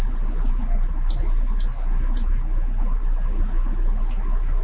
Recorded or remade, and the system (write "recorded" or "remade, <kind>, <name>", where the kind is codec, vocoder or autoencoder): recorded